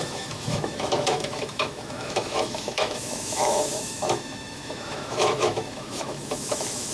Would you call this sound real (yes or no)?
no